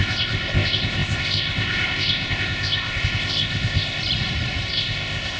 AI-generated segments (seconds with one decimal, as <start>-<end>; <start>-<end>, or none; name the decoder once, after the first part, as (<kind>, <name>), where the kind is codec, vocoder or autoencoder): 0.0-4.0 (codec, ZipCodec); 4.7-5.4